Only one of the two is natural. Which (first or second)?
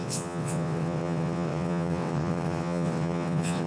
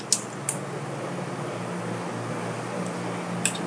second